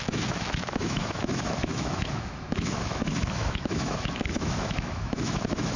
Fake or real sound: fake